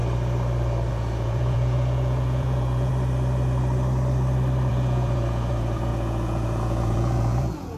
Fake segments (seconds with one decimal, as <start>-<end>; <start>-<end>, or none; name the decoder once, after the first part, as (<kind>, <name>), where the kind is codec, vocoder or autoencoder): 0.9-2.9 (vocoder, Vocos); 4.7-7.8